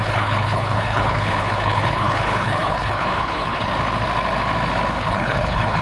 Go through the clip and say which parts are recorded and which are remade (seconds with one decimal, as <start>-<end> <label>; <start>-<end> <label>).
0.0-3.7 remade; 3.7-5.0 recorded; 5.0-5.8 remade